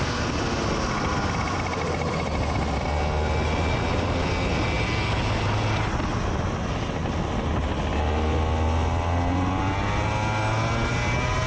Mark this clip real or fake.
real